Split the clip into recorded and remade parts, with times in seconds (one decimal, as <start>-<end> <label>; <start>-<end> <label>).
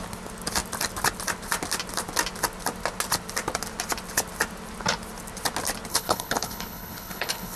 0.0-5.9 recorded; 5.9-7.6 remade